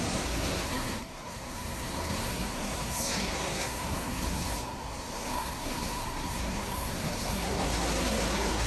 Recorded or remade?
remade